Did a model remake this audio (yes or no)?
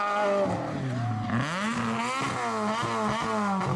no